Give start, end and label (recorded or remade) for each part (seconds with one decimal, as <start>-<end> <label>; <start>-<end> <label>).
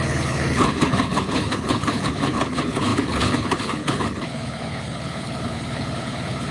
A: 0.0-6.5 remade